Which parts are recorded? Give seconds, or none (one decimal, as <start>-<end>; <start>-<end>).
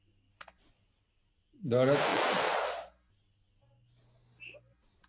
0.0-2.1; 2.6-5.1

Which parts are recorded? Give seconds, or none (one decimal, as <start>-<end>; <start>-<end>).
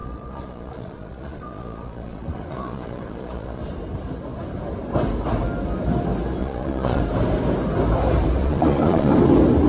3.6-6.4; 7.0-8.4; 9.1-9.7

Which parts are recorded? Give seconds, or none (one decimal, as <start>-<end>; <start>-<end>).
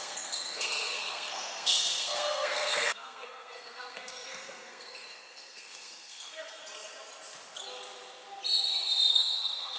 6.6-9.1